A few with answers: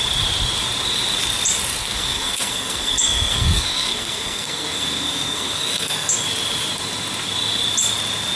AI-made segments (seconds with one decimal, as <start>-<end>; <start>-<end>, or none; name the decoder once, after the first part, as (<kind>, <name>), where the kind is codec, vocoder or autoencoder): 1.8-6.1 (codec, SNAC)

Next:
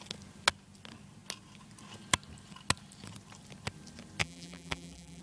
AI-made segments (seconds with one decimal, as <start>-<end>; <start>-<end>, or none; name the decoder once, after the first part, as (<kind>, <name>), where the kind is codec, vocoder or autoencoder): 4.2-5.2 (vocoder, BigVGAN v2)

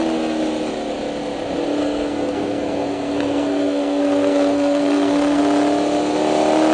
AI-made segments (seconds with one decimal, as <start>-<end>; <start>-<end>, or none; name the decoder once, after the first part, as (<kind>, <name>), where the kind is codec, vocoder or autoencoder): 1.8-5.4 (codec, SNAC)

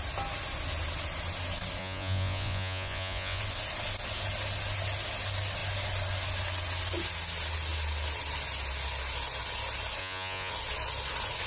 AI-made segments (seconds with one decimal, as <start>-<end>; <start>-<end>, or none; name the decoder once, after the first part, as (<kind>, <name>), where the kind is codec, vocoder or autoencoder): 1.8-3.4 (vocoder, Vocos); 10.0-10.5

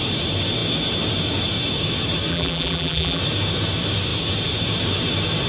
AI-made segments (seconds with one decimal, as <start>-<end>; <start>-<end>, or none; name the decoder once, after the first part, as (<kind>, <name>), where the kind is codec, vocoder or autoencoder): 2.3-3.2 (vocoder, BigVGAN v2)

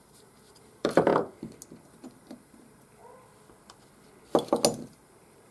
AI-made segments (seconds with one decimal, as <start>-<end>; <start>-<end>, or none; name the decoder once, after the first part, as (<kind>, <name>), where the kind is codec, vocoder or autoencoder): 0.0-1.1 (vocoder, BigVGAN v2); 1.8-3.0; 4.9-5.5

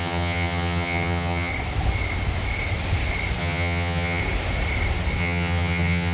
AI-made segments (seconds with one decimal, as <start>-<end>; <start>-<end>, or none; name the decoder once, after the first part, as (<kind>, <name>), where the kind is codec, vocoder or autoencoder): 0.0-1.5 (vocoder, HiFi-GAN); 3.4-4.2; 5.2-6.1

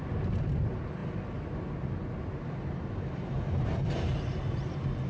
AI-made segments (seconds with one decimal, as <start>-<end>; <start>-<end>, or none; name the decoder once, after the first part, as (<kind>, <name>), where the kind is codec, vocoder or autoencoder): none